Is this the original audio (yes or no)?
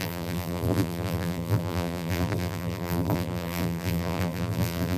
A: no